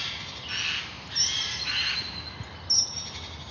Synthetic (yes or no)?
no